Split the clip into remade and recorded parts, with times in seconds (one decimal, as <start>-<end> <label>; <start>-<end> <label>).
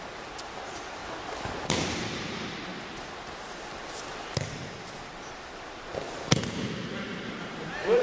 0.0-1.0 remade; 1.0-1.7 recorded; 1.7-2.7 remade; 2.7-6.9 recorded; 6.9-8.0 remade